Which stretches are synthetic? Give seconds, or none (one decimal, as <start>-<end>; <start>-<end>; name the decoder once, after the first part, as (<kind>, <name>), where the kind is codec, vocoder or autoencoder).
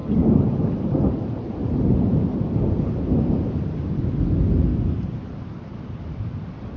none